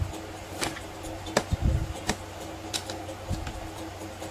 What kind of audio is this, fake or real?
real